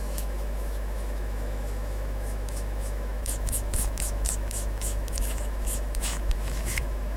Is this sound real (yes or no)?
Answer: no